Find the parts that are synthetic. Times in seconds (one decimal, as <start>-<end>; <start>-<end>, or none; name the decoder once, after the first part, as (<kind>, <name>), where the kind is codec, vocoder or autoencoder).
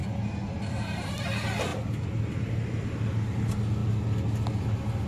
0.0-1.2 (vocoder, BigVGAN v2)